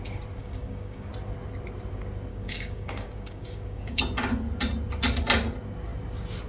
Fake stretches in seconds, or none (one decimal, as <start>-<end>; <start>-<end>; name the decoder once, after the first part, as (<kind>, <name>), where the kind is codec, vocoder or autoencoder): 0.4-1.1 (codec, DAC); 2.3-4.0